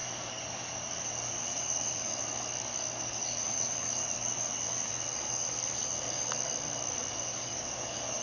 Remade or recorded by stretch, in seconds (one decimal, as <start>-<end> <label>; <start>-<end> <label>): 0.0-8.2 remade